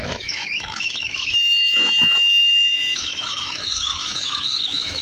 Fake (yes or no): yes